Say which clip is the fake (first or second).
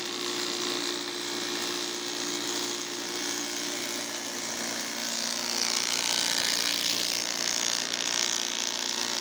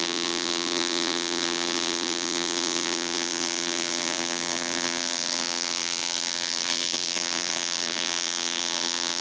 second